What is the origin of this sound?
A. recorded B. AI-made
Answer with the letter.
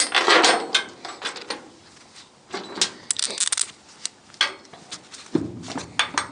A